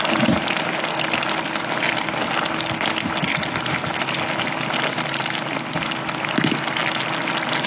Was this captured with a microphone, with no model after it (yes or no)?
yes